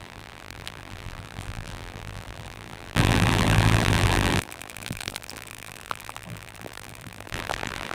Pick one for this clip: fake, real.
fake